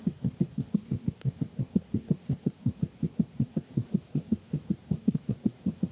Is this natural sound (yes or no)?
no